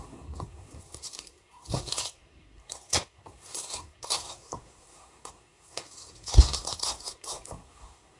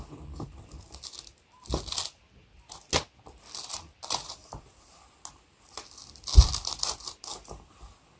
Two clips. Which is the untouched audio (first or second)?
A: second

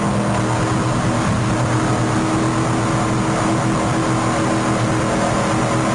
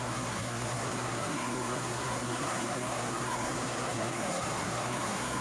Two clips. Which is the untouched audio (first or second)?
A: first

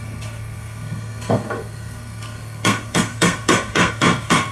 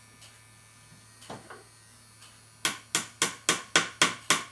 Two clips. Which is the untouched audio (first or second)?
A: second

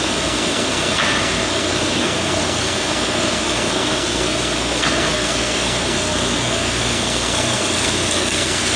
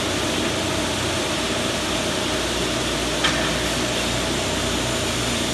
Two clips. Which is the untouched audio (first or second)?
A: second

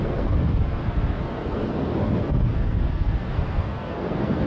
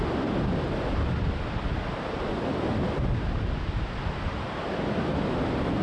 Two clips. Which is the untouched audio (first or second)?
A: second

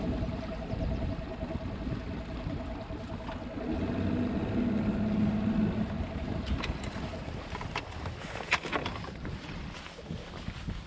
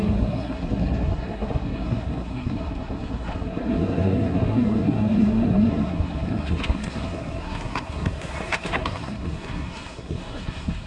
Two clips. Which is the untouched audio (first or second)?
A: first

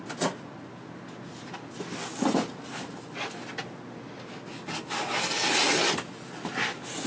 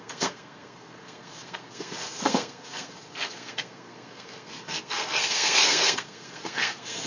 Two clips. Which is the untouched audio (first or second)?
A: first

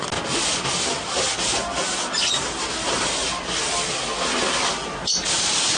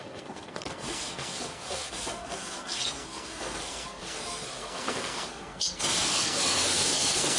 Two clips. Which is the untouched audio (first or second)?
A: first